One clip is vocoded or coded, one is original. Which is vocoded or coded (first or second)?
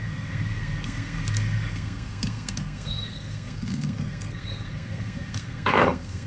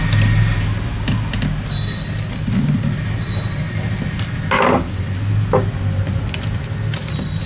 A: first